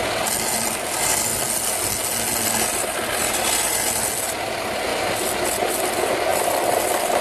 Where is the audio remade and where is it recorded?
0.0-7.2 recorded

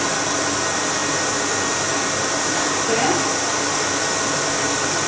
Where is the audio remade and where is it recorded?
0.0-5.1 recorded